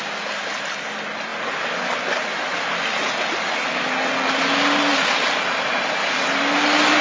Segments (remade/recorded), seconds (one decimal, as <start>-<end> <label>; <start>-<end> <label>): 0.0-7.0 recorded

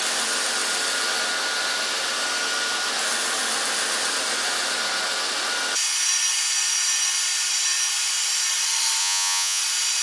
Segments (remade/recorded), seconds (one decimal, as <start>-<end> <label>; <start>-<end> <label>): 0.0-9.0 recorded; 9.0-9.6 remade; 9.6-10.0 recorded